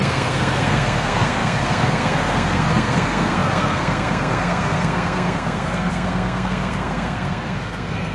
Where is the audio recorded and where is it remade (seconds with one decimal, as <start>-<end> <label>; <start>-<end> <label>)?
0.0-8.1 remade